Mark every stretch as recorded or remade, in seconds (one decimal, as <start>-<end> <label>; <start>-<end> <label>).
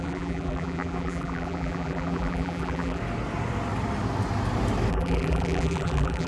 0.0-3.0 remade; 3.0-4.9 recorded; 4.9-6.3 remade